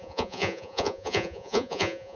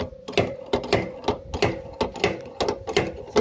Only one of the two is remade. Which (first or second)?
first